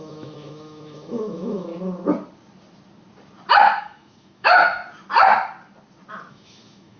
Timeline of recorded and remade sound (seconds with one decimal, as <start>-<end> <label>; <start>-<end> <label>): 0.0-1.7 remade; 1.7-3.8 recorded; 3.8-4.8 remade; 4.8-6.3 recorded; 6.3-7.0 remade